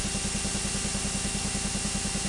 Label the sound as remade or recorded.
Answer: recorded